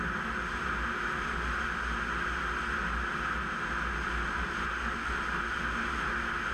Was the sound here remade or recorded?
recorded